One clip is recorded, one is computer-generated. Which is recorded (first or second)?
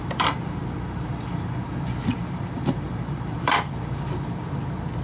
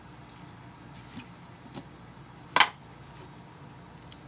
second